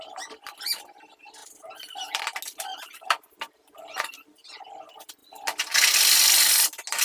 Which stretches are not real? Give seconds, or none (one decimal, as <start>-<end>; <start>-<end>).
1.4-2.2; 2.7-4.6

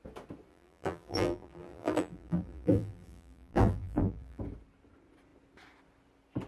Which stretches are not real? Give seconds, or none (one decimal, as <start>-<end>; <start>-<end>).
0.5-4.4

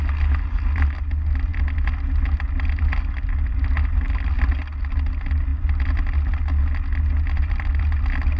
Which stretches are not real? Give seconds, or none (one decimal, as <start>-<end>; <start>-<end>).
none